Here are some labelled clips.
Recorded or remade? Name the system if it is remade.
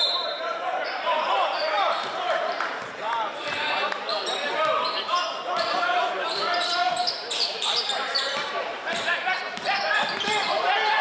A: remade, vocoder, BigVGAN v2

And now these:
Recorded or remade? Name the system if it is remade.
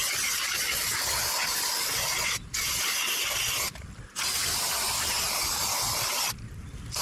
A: recorded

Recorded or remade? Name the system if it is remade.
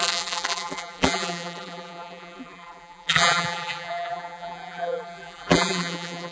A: remade, vocoder, BigVGAN v2